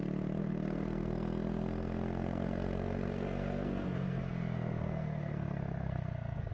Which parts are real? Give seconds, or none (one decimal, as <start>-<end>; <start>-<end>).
0.0-0.4; 4.3-4.8